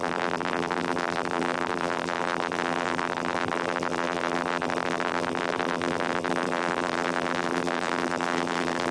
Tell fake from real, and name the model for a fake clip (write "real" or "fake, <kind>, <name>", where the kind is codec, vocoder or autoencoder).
fake, vocoder, BigVGAN v2